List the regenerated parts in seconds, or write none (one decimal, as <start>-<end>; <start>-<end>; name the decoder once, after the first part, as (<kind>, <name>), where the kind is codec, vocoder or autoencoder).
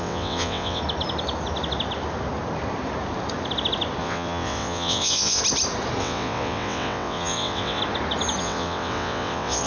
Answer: 0.0-0.8 (vocoder, WaveNeXt); 4.0-5.4; 6.0-7.8; 8.4-9.7